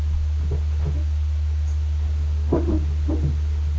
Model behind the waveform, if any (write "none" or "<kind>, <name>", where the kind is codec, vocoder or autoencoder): none